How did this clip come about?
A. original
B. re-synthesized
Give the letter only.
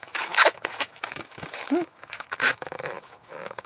B